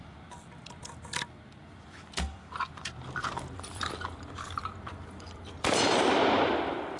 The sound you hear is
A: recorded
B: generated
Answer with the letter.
B